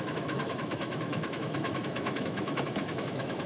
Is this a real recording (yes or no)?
no